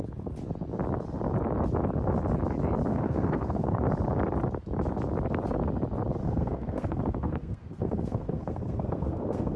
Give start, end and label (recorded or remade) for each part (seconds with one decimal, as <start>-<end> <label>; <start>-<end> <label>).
0.0-2.9 recorded; 2.9-3.9 remade; 3.9-6.2 recorded; 6.2-9.6 remade